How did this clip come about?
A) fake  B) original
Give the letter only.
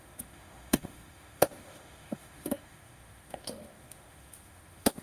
A